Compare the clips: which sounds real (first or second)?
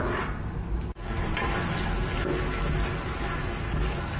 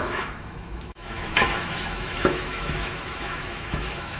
first